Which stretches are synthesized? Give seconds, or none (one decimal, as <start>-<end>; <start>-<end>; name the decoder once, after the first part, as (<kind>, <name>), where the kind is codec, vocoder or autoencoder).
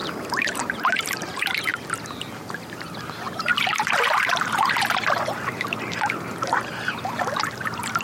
0.0-8.0 (vocoder, BigVGAN v2)